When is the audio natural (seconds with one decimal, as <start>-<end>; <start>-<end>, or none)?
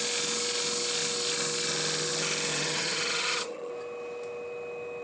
0.0-2.5; 3.7-5.0